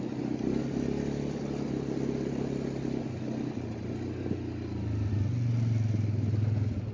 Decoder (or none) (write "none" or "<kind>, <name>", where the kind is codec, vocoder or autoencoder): none